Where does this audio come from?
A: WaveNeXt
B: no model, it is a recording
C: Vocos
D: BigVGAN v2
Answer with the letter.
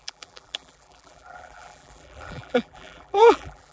D